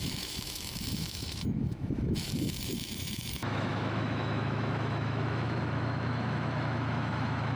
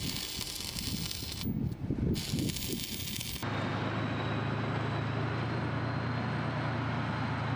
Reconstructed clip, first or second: first